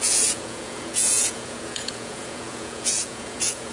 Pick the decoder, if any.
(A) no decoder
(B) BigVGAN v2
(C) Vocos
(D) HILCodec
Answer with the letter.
C